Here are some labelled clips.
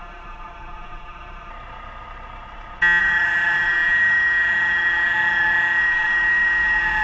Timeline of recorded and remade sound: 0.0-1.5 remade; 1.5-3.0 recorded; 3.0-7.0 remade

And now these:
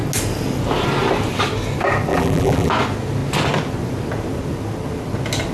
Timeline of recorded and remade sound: 0.0-2.1 recorded; 2.1-2.7 remade; 2.7-5.5 recorded

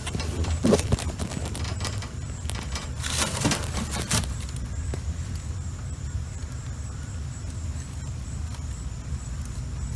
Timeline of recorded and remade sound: 0.0-10.0 remade

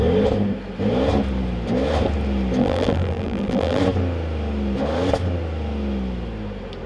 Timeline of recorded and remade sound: 0.0-2.6 recorded; 2.6-3.8 remade; 3.8-6.9 recorded

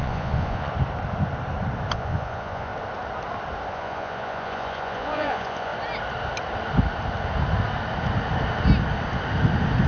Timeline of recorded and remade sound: 0.0-0.7 remade; 0.7-1.9 recorded; 1.9-2.7 remade; 2.7-3.7 recorded; 3.7-5.7 remade; 5.7-9.9 recorded

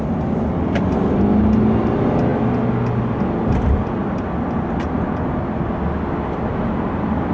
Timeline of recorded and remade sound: 0.0-7.3 recorded

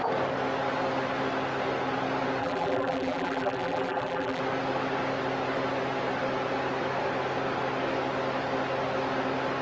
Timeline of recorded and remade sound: 0.0-2.4 recorded; 2.4-4.4 remade; 4.4-9.6 recorded